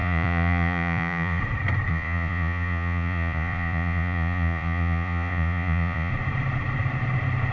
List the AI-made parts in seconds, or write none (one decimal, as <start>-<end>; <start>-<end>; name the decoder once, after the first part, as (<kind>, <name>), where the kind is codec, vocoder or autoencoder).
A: 0.0-1.4 (vocoder, Vocos); 1.9-6.1